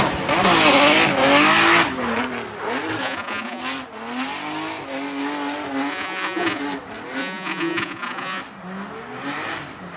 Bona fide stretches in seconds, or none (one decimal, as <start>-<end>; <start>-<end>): 0.0-3.0; 3.6-5.9; 6.6-7.2; 8.4-10.0